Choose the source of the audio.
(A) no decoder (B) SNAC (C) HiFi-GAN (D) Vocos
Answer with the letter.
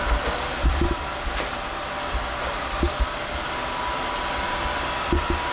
A